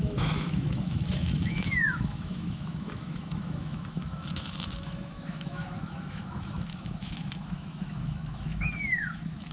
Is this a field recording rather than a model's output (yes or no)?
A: no